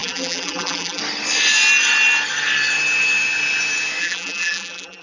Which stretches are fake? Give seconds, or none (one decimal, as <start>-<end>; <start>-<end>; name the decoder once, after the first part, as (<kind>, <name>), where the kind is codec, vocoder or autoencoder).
0.0-1.0 (vocoder, BigVGAN v2); 4.0-5.0